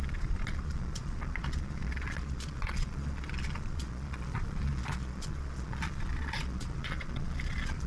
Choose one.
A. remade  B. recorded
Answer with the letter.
A